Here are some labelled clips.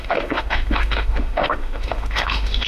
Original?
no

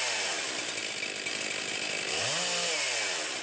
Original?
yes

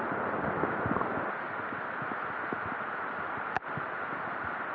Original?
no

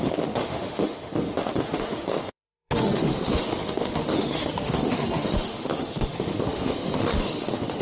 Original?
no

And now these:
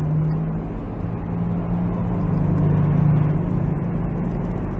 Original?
yes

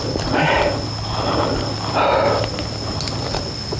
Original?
yes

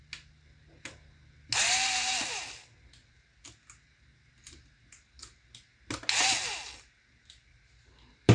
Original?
yes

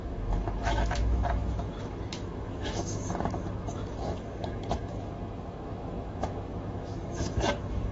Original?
no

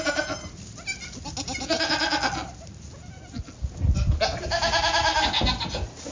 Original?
yes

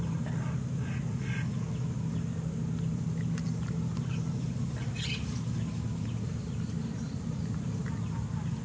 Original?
yes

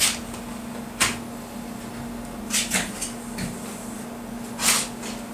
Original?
yes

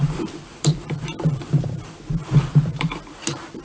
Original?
no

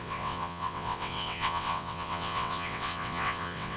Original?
no